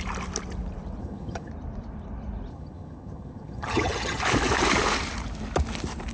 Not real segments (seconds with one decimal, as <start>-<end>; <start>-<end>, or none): 1.0-1.5; 2.5-4.2